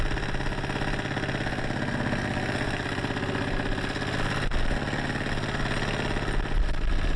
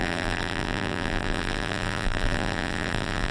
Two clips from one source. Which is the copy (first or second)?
second